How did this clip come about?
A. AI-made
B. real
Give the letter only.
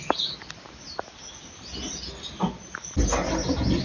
B